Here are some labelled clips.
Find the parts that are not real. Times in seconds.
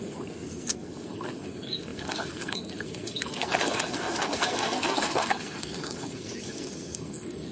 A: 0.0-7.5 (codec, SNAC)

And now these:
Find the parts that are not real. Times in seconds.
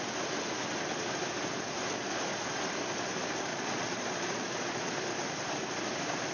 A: 3.5-4.9 (vocoder, Vocos)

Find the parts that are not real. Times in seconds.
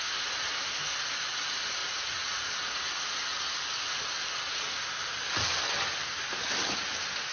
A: 1.8-2.5 (vocoder, Vocos)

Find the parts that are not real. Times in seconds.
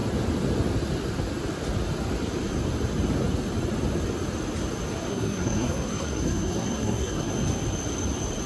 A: 5.1-7.3 (codec, SNAC)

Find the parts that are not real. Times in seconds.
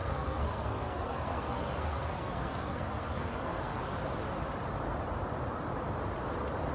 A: 0.0-3.8 (codec, SNAC)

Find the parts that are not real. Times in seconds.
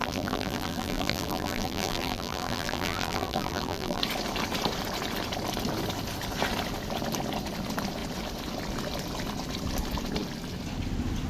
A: 0.0-4.0 (vocoder, BigVGAN v2)